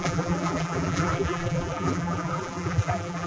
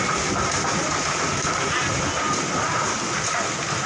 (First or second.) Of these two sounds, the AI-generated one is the first